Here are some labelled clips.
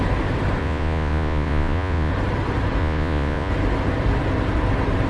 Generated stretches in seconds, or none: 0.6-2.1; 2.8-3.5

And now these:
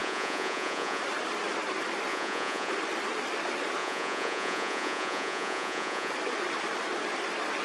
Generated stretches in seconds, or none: 0.0-1.0; 2.1-2.7; 3.8-6.1

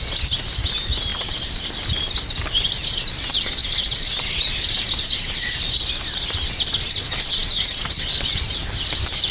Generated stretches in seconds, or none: none

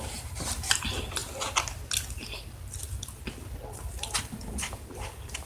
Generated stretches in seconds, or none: 0.0-1.2; 4.2-5.5

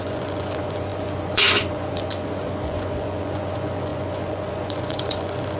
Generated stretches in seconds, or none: 0.0-5.6

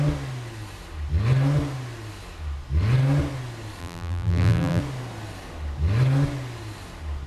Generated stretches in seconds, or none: 3.8-4.8

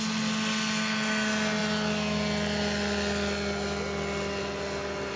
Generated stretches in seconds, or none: none